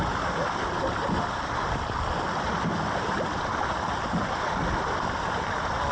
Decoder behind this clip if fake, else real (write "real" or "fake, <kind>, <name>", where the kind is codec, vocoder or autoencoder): fake, vocoder, BigVGAN v2